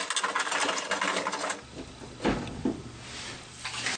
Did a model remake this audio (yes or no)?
no